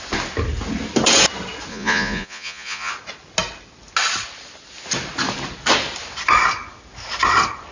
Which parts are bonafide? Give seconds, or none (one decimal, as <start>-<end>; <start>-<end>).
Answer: 0.0-1.7; 2.9-7.7